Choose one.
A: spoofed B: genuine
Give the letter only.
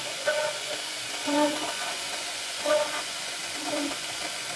A